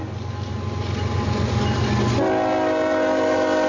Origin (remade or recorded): recorded